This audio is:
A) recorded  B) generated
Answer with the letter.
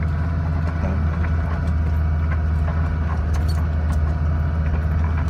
A